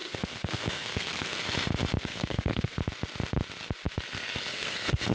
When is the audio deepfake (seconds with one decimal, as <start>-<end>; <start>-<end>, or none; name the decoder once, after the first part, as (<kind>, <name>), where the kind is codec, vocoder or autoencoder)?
0.0-1.4 (codec, SNAC); 2.0-2.8; 4.5-5.1